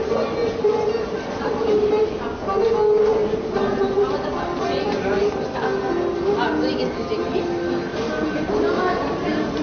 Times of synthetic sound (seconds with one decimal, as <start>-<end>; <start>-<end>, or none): 0.4-1.7; 7.9-9.6